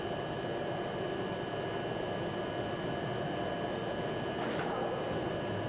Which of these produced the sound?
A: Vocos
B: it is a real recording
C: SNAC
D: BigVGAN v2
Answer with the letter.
B